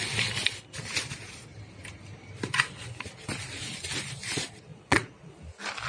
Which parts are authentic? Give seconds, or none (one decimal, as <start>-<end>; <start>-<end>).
0.0-4.7; 5.3-5.9